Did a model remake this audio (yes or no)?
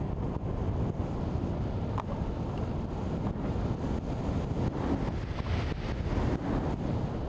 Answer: no